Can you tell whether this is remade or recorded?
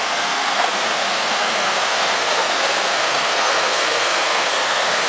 remade